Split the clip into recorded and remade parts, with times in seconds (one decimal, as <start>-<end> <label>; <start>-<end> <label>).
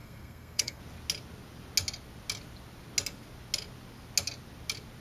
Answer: 0.0-0.8 remade; 0.8-5.0 recorded